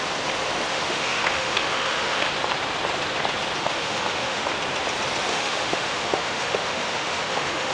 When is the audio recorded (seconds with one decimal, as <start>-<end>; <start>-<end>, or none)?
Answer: 0.0-0.7; 2.3-3.6; 4.5-5.3